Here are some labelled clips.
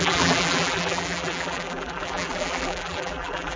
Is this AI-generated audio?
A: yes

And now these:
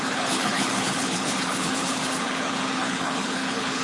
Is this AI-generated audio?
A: yes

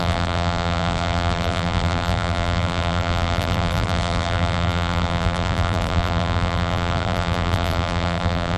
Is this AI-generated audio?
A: yes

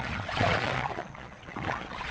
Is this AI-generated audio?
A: yes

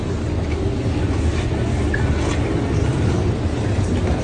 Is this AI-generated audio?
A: no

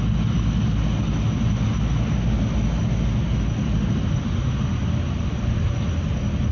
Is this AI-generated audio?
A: no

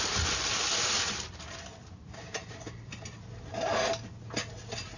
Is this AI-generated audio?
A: no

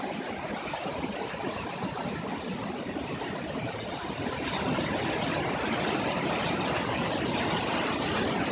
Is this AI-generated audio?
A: no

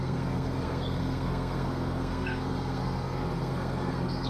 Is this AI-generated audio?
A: yes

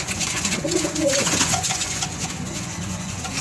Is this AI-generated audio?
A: yes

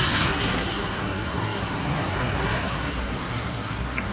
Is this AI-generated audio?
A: yes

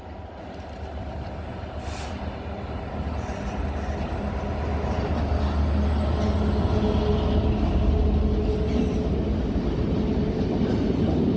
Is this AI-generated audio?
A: no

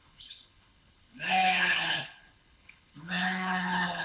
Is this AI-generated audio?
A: yes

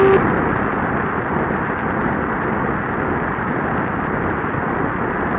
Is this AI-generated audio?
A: no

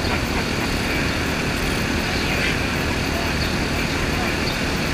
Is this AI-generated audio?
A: no